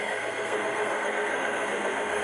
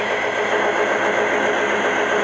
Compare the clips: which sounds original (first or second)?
second